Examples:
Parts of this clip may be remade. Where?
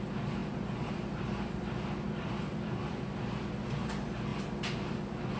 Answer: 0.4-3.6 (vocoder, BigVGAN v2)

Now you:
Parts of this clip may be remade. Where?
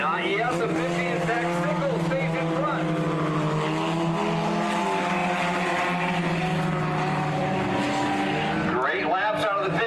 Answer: none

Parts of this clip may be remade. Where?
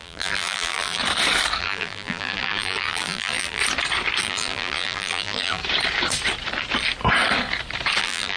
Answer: 0.0-1.0 (vocoder, BigVGAN v2); 1.6-3.6; 4.2-5.6; 8.0-8.4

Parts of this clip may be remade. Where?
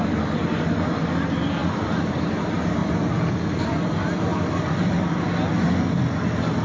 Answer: 1.6-2.3 (vocoder, BigVGAN v2)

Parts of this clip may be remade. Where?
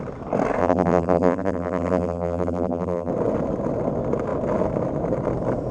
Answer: 0.6-3.1 (vocoder, BigVGAN v2)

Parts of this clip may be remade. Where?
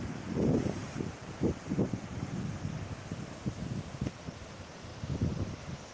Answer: none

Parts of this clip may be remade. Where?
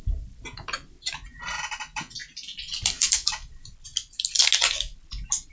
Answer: 2.2-3.5 (vocoder, BigVGAN v2)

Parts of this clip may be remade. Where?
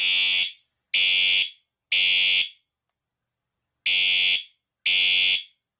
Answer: none